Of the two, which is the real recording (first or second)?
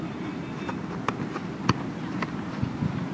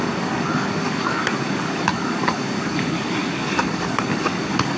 first